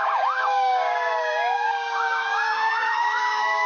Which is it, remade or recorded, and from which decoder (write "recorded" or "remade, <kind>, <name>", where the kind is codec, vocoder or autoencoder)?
remade, codec, DAC